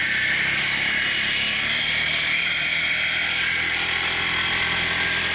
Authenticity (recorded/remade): remade